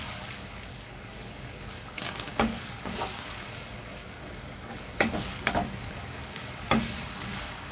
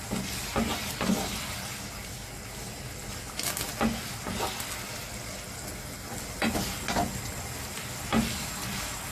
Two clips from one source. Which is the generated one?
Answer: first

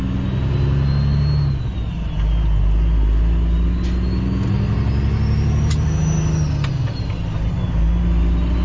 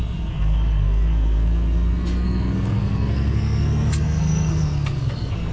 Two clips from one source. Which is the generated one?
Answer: second